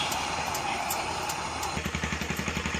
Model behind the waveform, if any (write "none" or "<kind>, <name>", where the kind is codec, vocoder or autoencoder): none